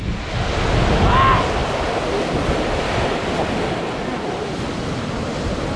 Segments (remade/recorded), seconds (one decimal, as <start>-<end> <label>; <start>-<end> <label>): 0.0-5.8 recorded